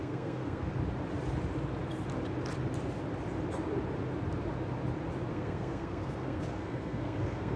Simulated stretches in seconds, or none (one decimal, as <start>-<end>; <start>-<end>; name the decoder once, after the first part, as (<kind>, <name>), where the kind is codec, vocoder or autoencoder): 0.0-0.7 (codec, SNAC); 5.3-7.6